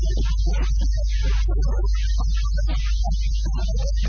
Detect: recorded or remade recorded